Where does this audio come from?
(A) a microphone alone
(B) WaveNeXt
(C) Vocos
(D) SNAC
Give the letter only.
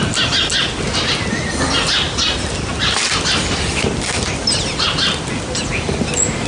A